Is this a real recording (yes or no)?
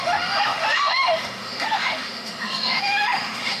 no